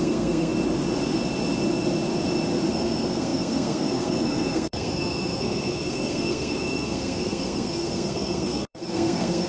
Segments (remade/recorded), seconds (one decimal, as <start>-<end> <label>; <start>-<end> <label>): 0.0-0.5 remade; 0.5-2.7 recorded; 2.7-9.5 remade